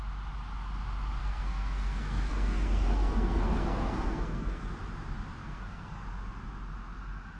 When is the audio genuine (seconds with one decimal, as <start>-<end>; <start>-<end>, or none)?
0.0-1.2; 4.7-5.4; 6.0-7.4